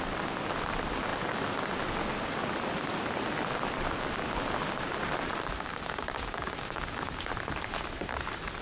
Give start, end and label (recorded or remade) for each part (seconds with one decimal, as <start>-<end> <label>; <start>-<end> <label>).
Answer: 0.0-5.7 recorded; 5.7-7.2 remade; 7.2-8.6 recorded